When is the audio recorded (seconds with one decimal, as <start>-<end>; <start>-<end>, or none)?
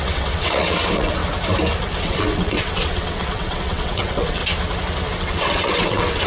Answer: 1.2-2.0; 4.4-5.2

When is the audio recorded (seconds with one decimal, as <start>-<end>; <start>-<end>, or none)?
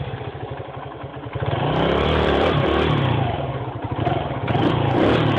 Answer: 0.0-1.1; 4.0-5.4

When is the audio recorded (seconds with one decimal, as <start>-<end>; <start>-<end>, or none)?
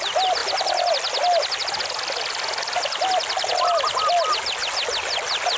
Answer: 0.0-5.6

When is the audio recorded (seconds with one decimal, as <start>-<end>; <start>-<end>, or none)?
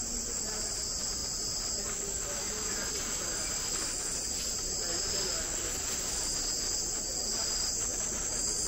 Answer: 0.0-7.9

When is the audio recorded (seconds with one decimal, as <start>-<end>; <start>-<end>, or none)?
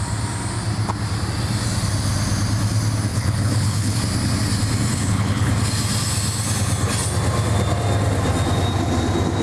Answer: 0.0-3.1; 4.0-4.9; 5.5-9.4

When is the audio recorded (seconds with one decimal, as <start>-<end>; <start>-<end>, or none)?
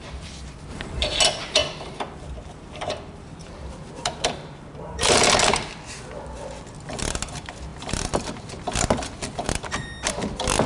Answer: 0.0-0.7; 1.2-1.6; 5.3-10.7